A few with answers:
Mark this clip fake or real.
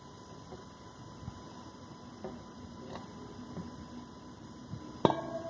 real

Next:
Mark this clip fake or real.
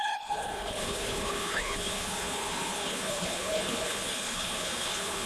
fake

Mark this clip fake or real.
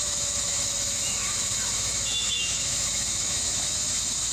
fake